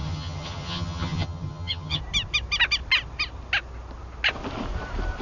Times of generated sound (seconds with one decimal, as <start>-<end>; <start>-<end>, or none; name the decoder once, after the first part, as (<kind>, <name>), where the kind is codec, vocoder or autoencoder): 0.0-2.0 (vocoder, HiFi-GAN)